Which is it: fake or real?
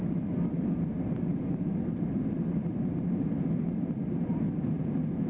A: fake